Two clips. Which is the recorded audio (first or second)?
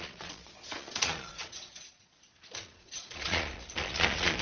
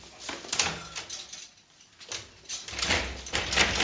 second